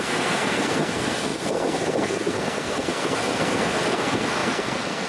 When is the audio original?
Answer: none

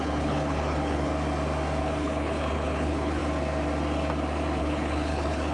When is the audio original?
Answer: 1.1-1.8; 3.2-4.6

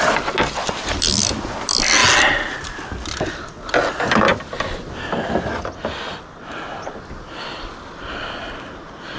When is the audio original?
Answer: 0.0-9.2

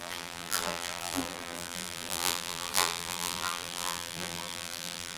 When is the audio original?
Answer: none

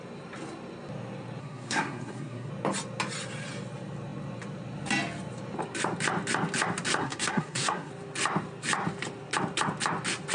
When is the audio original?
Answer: 0.0-1.4; 2.5-7.0; 7.9-10.3